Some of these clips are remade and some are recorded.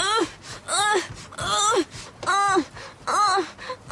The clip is recorded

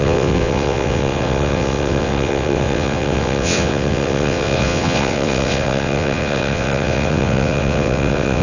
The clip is remade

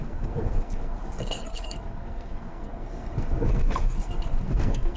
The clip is remade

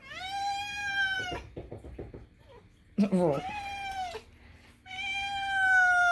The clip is recorded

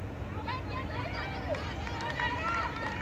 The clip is recorded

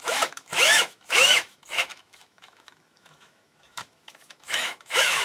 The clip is remade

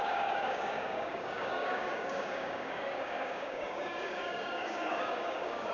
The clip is remade